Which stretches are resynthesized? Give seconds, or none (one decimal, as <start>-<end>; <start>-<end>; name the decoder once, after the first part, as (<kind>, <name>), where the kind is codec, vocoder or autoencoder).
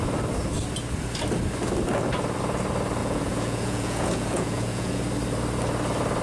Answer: 3.0-5.0 (vocoder, Vocos)